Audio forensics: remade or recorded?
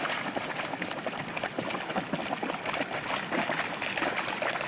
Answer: recorded